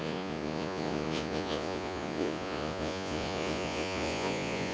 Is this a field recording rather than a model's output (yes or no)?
no